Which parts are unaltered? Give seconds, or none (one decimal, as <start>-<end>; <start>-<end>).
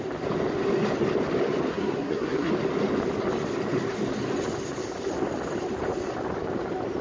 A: 0.0-1.7; 2.5-7.0